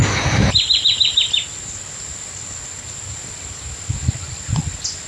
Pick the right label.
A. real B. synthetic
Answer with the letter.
A